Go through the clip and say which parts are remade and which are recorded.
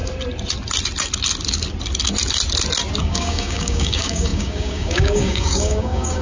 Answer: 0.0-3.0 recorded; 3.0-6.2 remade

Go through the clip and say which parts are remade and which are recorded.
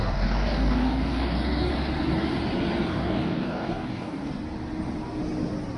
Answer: 0.0-1.7 remade; 1.7-2.9 recorded; 2.9-4.3 remade; 4.3-5.8 recorded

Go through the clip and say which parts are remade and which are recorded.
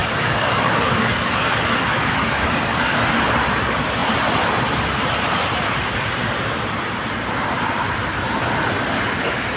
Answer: 0.0-3.1 remade; 3.1-9.6 recorded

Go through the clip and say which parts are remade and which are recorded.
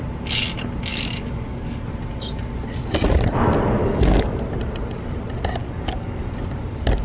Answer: 0.0-0.9 recorded; 0.9-1.8 remade; 1.8-3.8 recorded; 3.8-4.3 remade; 4.3-5.6 recorded; 5.6-6.3 remade; 6.3-7.0 recorded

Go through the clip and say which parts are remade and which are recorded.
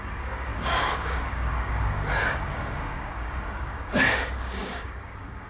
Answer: 0.0-5.5 remade